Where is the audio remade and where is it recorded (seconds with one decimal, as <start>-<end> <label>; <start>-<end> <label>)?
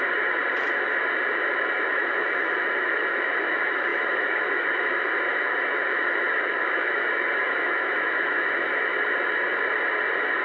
0.0-0.4 remade; 0.4-2.0 recorded; 2.0-8.9 remade; 8.9-10.4 recorded